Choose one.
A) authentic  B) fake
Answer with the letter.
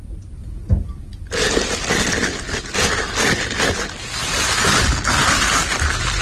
A